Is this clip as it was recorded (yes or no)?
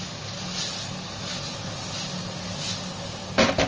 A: yes